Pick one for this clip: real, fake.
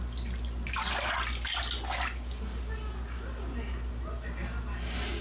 real